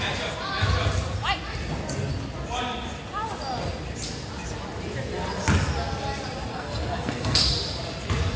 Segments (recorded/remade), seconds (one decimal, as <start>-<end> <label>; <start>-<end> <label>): 0.0-6.5 recorded; 6.5-7.4 remade; 7.4-8.4 recorded

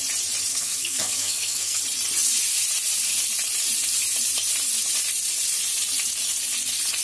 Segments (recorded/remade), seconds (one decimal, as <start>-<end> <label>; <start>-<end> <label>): 0.0-0.5 recorded; 0.5-1.8 remade; 1.8-7.0 recorded